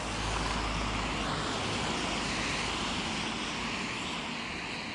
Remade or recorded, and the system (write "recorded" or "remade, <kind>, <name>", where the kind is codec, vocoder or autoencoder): recorded